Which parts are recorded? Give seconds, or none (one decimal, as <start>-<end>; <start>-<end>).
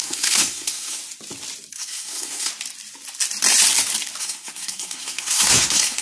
1.0-1.7; 2.5-4.2